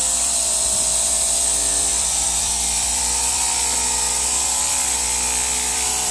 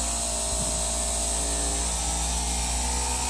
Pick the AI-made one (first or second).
first